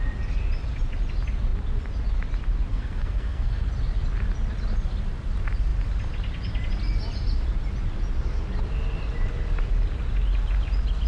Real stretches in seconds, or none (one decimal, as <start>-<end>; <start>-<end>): 0.0-2.7; 3.7-11.1